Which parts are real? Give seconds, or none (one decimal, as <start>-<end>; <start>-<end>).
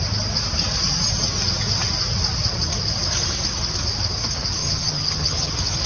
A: 0.0-4.6; 5.5-5.9